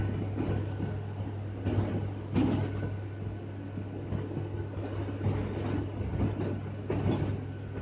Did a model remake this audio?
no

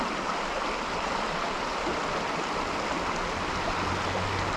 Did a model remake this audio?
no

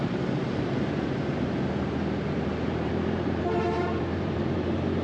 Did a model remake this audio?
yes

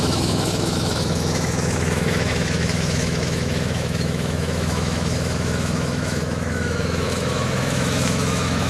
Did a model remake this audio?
yes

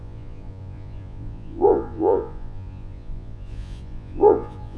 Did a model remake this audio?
yes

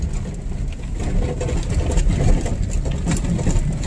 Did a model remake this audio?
no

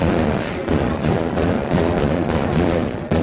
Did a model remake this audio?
yes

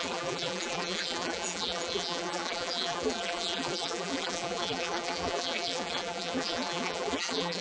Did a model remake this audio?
yes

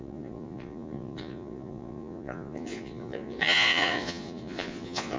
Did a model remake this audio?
yes